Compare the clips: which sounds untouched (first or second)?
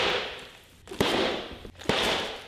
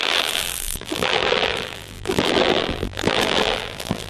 first